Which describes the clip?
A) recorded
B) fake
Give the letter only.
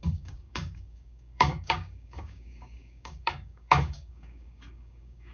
B